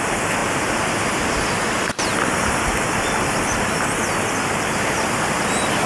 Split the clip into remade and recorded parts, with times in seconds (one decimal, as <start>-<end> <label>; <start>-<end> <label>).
0.0-5.9 recorded